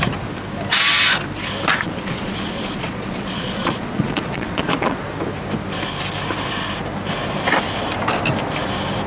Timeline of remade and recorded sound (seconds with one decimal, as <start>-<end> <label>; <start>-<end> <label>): 0.0-1.7 recorded; 1.7-5.0 remade; 5.0-9.1 recorded